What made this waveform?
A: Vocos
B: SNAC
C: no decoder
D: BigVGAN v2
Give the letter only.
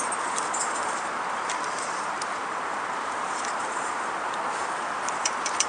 D